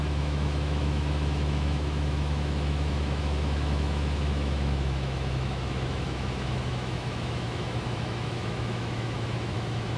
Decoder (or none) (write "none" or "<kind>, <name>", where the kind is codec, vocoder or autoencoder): autoencoder, DAC-VAE